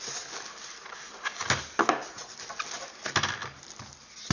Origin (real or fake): real